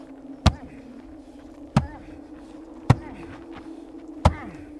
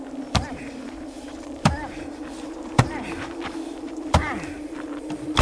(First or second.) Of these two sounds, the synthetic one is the second